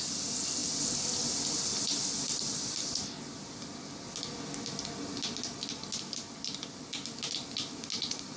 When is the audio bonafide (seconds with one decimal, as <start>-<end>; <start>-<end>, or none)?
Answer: 0.0-8.4